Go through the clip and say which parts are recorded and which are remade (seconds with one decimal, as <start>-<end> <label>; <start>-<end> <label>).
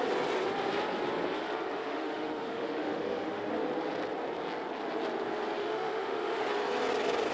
0.0-1.8 recorded; 1.8-3.5 remade; 3.5-5.6 recorded; 5.6-6.5 remade; 6.5-7.3 recorded